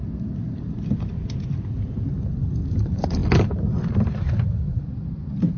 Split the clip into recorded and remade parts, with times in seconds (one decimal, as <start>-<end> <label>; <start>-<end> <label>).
0.0-2.7 recorded; 2.7-3.2 remade; 3.2-3.9 recorded; 3.9-5.6 remade